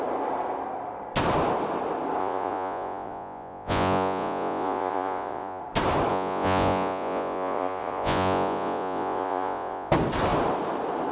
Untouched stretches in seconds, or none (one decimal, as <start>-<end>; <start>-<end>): 0.0-2.2; 5.6-6.1; 9.9-11.1